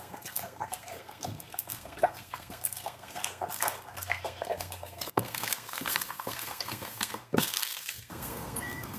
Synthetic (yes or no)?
yes